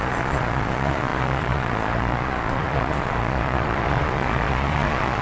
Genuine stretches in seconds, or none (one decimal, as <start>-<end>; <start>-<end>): none

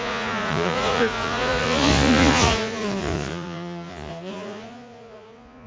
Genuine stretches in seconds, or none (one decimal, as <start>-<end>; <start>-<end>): none

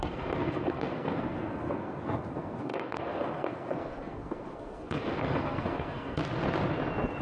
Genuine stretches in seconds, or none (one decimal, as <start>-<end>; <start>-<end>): 6.2-7.2

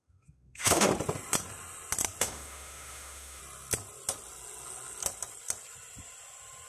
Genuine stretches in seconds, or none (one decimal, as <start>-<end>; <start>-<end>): 0.9-2.2; 3.4-6.7

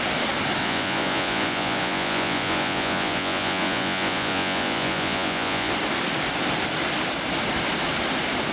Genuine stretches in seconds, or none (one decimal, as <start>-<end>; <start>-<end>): 0.0-0.6; 5.7-8.5

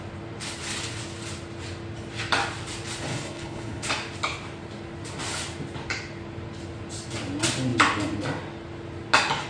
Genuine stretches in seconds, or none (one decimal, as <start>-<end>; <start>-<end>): 0.0-3.1; 3.9-9.5

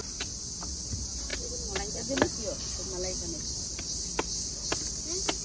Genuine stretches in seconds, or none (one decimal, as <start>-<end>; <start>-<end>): 0.0-5.4